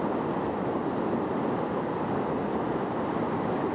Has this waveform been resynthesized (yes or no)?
no